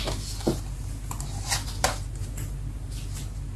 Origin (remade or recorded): recorded